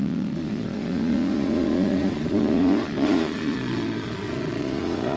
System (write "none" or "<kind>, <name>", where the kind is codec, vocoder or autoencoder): vocoder, Vocos